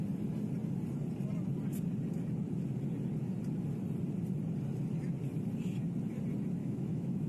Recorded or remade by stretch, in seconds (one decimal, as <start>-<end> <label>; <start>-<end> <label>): 0.0-6.6 recorded; 6.6-7.3 remade